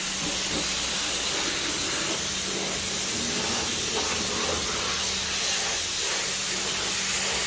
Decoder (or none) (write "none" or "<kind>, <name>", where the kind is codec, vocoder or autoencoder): none